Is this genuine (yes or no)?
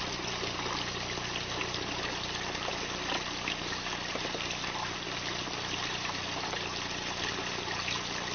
no